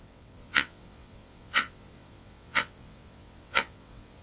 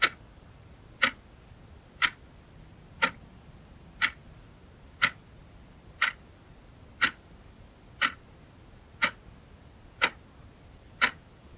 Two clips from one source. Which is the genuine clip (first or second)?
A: second